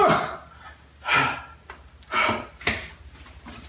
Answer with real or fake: real